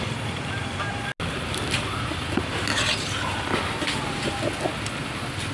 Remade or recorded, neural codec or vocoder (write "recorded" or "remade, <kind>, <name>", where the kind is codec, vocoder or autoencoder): recorded